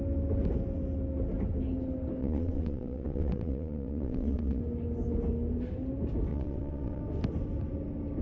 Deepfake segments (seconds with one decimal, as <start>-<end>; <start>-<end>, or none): 2.2-4.6; 6.3-7.0